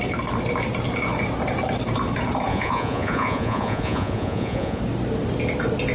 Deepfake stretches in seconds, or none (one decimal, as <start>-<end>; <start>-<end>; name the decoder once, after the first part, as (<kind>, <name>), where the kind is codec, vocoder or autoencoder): 2.5-4.8 (vocoder, Vocos)